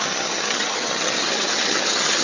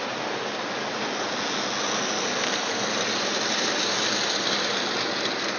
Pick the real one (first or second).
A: second